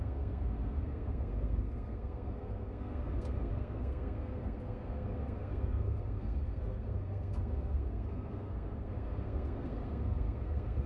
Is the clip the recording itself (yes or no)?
no